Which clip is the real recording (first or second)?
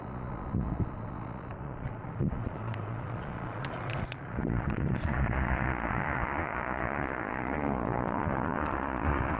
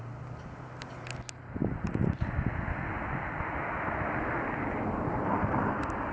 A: second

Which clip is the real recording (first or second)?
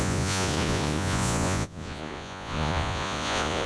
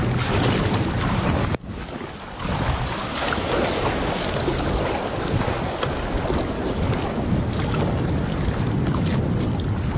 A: second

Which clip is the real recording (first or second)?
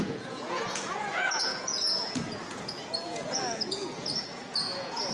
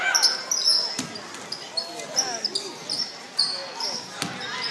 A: second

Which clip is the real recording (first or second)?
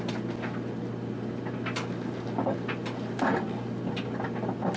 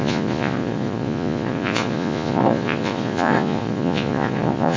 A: first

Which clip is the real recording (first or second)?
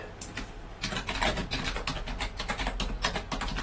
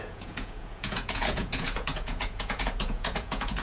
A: first